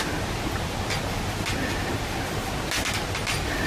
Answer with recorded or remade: recorded